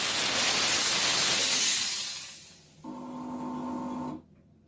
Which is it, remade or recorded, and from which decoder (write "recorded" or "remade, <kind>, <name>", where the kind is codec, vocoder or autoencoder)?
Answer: recorded